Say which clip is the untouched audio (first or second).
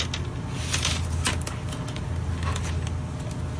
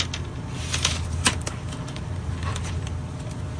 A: first